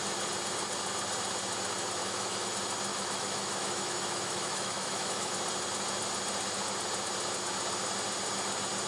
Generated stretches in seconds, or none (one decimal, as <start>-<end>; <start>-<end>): 2.0-2.5; 2.9-5.3